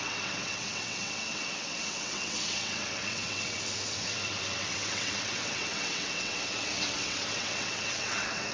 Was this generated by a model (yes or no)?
yes